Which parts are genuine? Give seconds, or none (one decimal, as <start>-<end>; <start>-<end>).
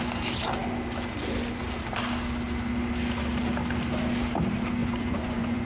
0.0-4.8